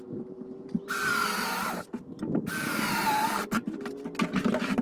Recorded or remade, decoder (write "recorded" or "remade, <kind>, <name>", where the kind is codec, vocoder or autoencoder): recorded